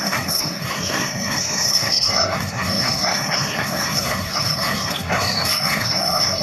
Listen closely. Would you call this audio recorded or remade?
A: remade